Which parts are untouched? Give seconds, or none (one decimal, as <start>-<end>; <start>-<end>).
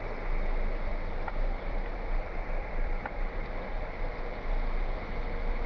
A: 0.0-0.9; 3.6-5.7